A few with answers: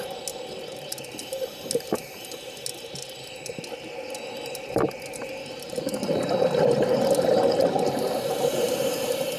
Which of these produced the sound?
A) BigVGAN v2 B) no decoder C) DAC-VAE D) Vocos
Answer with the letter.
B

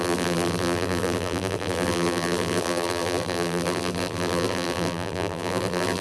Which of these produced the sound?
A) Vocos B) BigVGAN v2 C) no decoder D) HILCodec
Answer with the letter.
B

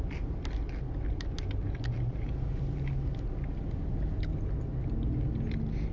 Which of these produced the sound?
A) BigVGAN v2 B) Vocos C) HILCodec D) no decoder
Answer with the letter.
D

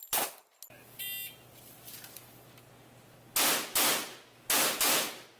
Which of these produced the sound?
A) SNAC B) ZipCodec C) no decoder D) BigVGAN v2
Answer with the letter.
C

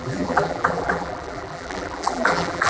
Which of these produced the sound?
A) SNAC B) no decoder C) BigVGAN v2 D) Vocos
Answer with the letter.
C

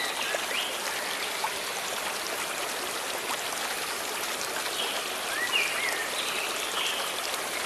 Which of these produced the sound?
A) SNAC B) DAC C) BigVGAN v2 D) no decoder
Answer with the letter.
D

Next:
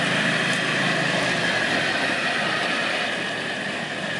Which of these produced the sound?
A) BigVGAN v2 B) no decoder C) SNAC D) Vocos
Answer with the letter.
A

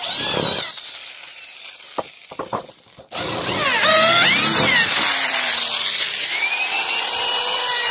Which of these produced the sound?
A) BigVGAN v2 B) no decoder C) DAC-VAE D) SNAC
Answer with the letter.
A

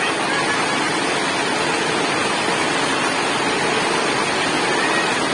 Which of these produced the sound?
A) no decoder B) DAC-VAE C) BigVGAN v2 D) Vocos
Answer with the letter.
A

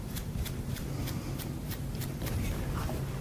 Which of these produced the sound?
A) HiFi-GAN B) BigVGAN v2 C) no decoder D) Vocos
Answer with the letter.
B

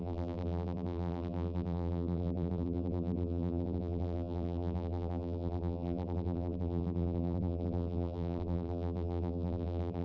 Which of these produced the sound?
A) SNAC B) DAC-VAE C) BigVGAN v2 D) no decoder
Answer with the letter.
C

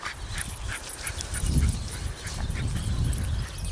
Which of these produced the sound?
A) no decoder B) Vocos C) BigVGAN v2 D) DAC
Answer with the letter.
A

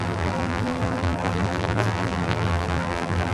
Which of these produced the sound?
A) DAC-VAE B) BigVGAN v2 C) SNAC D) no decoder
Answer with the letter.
B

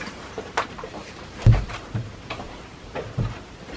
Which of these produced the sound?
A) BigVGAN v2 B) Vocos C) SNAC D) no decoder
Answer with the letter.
A